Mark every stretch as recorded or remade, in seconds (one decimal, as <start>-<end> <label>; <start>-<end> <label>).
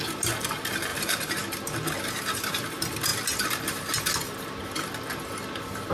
0.0-0.9 recorded; 0.9-1.4 remade; 1.4-5.9 recorded